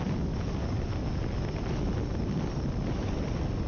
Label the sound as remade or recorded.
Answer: recorded